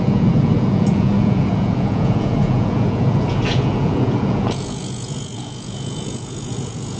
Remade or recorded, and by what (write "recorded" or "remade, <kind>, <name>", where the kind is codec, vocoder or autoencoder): remade, vocoder, Vocos